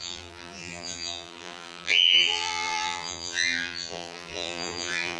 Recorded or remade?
remade